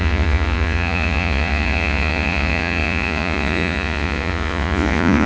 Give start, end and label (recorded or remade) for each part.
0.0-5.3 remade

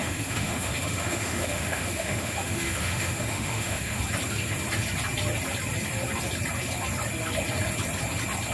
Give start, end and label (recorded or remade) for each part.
0.0-4.0 remade; 4.0-8.5 recorded